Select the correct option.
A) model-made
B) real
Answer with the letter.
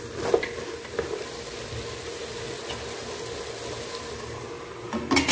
B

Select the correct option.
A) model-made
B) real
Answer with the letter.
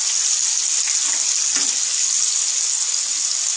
B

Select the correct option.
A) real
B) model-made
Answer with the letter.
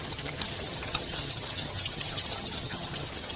B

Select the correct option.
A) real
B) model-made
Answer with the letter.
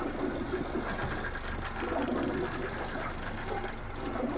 A